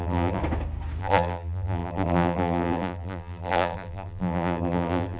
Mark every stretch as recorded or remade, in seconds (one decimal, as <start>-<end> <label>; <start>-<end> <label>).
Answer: 0.0-0.4 remade; 0.4-1.0 recorded; 1.0-5.2 remade